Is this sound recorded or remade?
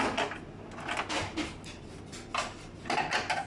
recorded